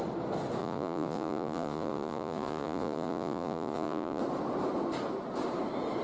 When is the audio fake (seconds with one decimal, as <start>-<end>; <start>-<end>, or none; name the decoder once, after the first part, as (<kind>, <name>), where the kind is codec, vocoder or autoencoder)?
0.6-4.2 (vocoder, Vocos)